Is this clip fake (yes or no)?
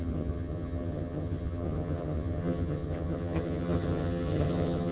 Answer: yes